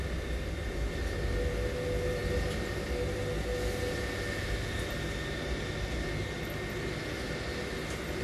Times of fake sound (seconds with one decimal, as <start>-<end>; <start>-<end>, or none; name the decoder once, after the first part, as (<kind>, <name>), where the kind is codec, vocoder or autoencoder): none